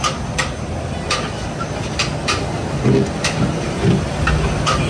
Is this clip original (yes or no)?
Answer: yes